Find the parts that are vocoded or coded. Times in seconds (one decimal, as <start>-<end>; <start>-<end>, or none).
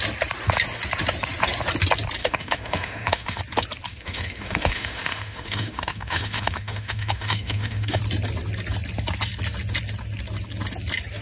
2.2-3.4; 3.9-8.0